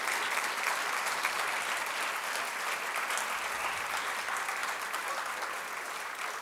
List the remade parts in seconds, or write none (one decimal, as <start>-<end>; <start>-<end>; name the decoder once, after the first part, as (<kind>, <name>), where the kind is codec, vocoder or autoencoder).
4.6-5.2 (vocoder, BigVGAN v2)